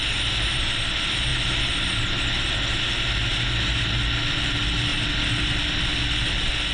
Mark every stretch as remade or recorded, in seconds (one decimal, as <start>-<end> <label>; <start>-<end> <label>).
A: 0.0-6.7 recorded